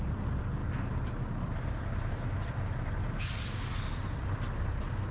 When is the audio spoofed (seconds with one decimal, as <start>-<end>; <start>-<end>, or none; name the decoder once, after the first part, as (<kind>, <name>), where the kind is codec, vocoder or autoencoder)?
none